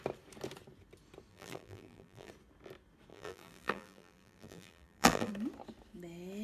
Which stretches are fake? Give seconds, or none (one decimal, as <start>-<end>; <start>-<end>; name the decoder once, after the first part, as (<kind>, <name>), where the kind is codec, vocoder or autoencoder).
1.3-2.3 (vocoder, BigVGAN v2); 3.1-5.3